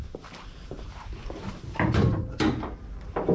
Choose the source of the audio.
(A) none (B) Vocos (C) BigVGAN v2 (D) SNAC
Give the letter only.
C